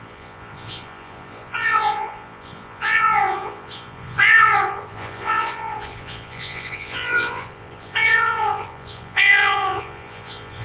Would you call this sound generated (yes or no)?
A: yes